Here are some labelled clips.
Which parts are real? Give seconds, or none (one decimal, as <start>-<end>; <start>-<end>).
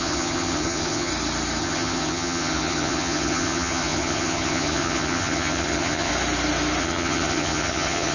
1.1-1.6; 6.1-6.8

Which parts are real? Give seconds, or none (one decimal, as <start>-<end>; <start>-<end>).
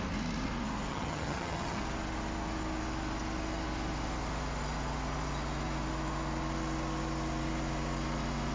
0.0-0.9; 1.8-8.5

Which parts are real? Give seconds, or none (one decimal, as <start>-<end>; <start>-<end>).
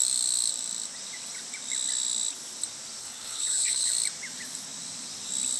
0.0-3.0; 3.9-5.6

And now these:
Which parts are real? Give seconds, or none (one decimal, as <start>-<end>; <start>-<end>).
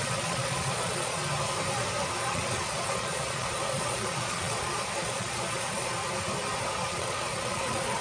1.2-2.2; 6.0-6.7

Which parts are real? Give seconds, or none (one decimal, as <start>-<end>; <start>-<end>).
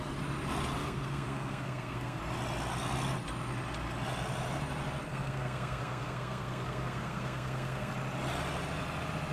0.0-0.8; 2.2-5.1; 7.9-9.3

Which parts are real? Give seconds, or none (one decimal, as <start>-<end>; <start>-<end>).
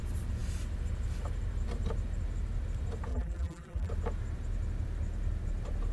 0.0-3.1; 3.9-5.9